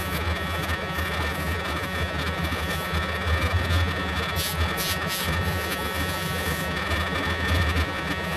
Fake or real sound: fake